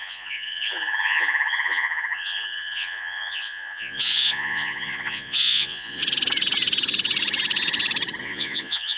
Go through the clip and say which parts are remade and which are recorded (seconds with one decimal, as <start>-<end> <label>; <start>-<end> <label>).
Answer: 0.0-6.0 remade; 6.0-8.2 recorded; 8.2-9.0 remade